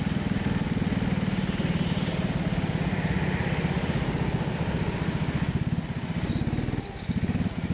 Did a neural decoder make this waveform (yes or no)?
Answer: no